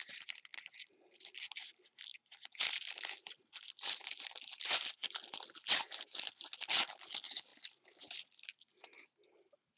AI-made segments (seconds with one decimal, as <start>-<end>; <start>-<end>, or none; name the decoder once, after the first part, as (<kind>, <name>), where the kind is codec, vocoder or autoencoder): none